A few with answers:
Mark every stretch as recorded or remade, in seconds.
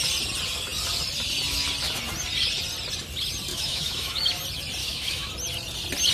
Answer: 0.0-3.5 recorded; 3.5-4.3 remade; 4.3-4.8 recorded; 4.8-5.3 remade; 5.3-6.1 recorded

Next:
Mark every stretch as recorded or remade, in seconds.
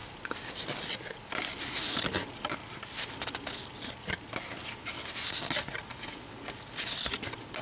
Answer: 0.0-7.6 recorded